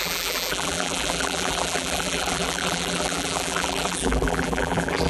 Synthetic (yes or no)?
yes